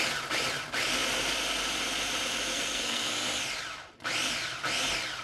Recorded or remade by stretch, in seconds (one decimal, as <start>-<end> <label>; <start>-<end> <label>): 0.0-2.5 recorded; 2.5-3.1 remade; 3.1-5.2 recorded